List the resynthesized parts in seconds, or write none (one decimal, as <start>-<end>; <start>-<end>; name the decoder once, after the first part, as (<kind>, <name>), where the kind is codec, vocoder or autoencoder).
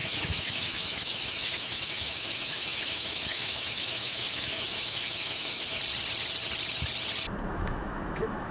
0.0-5.8 (autoencoder, DAC-VAE); 7.5-8.5